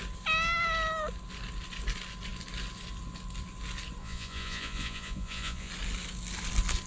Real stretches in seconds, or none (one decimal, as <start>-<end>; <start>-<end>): 0.0-4.0; 5.7-6.9